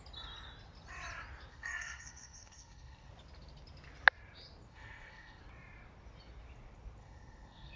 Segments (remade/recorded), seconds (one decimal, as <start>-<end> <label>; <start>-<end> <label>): 0.0-1.5 recorded; 1.5-3.1 remade; 3.1-4.7 recorded; 4.7-5.4 remade; 5.4-7.0 recorded; 7.0-7.8 remade